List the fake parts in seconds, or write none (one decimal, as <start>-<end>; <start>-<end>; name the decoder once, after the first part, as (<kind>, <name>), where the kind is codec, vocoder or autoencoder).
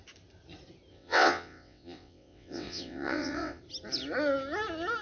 0.9-3.6 (vocoder, WaveNeXt)